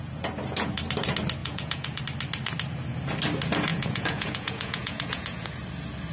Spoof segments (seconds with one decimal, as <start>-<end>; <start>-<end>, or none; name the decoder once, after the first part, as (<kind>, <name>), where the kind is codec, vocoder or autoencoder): 1.4-2.0 (vocoder, Vocos); 3.7-5.5